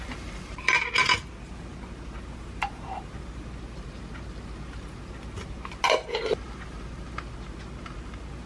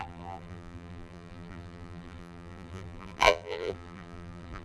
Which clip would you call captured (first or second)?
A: first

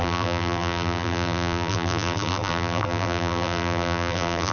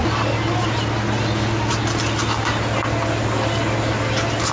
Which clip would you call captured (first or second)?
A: second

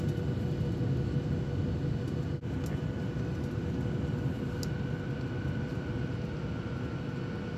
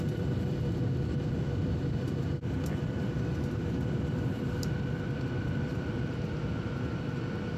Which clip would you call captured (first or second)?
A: first